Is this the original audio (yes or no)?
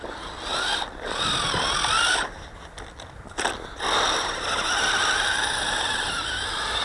yes